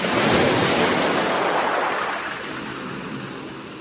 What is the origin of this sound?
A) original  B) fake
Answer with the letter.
A